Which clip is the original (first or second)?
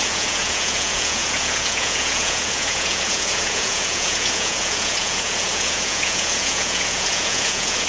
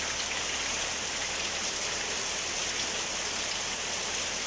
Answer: second